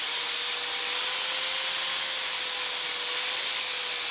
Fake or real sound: real